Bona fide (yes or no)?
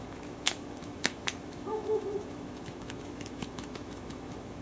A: no